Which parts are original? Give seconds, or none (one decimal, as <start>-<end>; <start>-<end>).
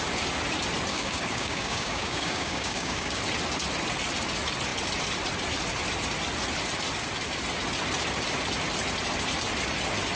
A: 0.0-0.9; 3.2-10.2